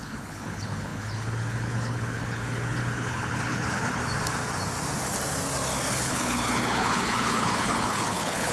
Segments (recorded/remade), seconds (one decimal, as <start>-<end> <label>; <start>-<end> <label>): 0.0-4.0 remade; 4.0-5.9 recorded; 5.9-8.5 remade